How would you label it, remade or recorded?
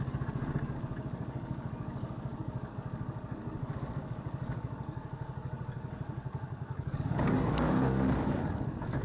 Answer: remade